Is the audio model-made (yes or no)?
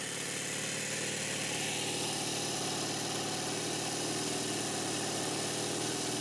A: no